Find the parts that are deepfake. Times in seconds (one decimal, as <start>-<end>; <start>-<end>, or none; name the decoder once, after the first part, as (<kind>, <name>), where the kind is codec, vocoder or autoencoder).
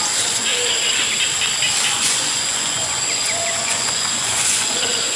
0.0-0.5 (vocoder, Vocos); 1.9-5.2